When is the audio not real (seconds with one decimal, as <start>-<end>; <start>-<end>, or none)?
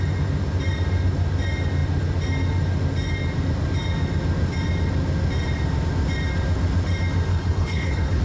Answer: 7.3-8.2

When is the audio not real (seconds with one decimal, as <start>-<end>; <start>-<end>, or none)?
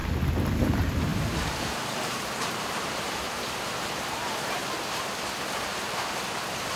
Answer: 0.6-4.6; 5.6-6.8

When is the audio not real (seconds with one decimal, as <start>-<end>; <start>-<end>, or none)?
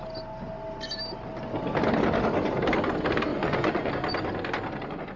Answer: 3.3-3.9